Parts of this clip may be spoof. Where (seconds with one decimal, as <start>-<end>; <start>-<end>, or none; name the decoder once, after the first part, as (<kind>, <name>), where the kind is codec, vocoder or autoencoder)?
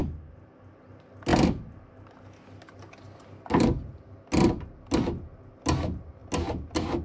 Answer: none